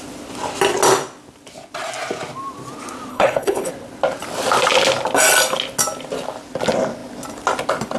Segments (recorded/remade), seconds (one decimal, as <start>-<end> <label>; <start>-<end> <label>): 0.0-3.1 recorded; 3.1-3.7 remade; 3.7-8.0 recorded